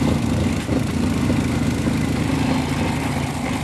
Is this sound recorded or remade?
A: recorded